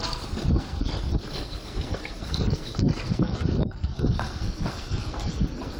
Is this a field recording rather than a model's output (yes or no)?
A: no